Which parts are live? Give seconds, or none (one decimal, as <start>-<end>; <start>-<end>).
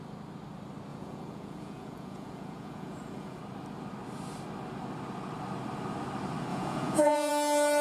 0.0-0.9; 3.4-6.5; 7.3-7.8